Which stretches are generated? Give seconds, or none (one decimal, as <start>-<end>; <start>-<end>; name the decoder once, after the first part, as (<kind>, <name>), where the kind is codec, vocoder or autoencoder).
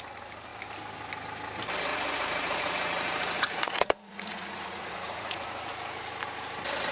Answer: 1.9-6.0 (vocoder, Vocos)